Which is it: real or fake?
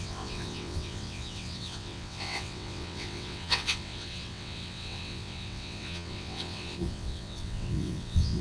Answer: fake